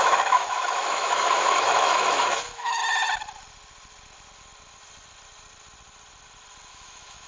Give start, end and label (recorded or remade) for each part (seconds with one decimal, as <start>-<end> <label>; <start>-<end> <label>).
0.0-2.8 remade; 2.8-6.7 recorded; 6.7-7.3 remade